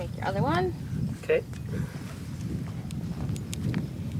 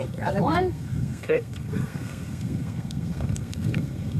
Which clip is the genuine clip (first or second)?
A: first